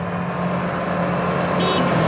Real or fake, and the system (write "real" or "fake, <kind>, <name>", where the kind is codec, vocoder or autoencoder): real